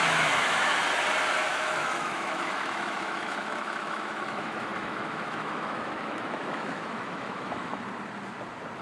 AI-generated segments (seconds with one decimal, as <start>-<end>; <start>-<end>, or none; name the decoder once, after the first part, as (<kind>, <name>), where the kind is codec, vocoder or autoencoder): 0.0-0.8 (autoencoder, DAC-VAE); 1.5-7.7